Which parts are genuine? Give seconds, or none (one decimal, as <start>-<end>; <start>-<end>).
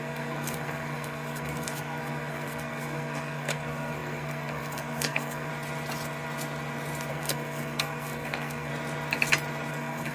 5.5-7.1; 8.7-9.7